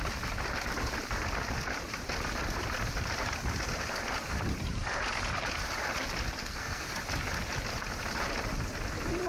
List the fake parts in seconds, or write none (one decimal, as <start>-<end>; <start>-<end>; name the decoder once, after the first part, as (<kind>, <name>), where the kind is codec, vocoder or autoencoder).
6.4-6.9 (codec, SNAC)